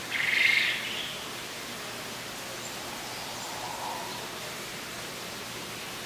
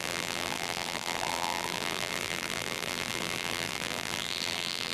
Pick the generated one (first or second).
second